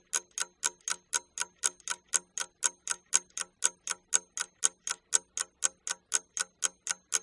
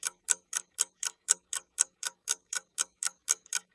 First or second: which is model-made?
second